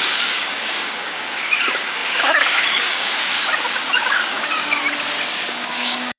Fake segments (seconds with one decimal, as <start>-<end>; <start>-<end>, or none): 0.0-3.3; 4.1-4.8; 5.5-6.2